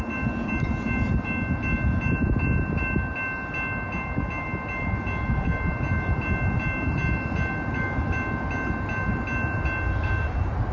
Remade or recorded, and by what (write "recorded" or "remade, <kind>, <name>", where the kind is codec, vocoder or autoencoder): recorded